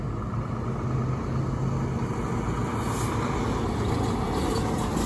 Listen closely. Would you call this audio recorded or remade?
recorded